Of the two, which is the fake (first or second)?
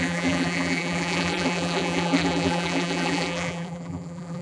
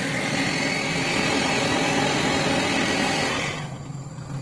first